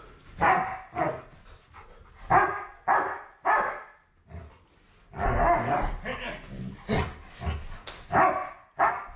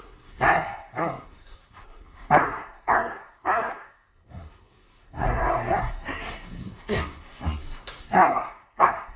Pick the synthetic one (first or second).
second